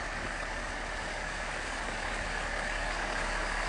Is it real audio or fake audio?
fake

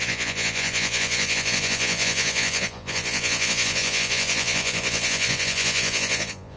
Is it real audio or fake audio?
fake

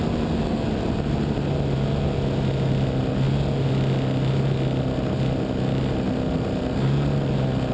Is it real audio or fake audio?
real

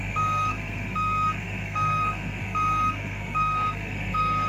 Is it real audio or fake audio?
fake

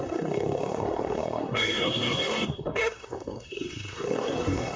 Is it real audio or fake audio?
fake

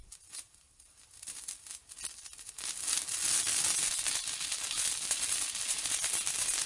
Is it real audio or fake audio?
real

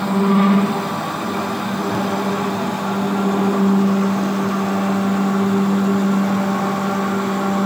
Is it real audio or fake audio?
real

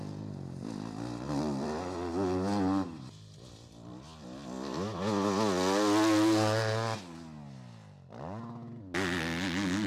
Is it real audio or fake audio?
real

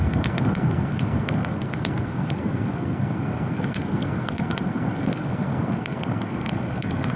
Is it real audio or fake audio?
fake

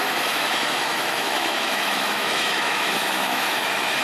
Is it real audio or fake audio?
fake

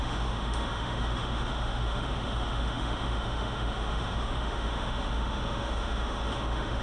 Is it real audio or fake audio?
fake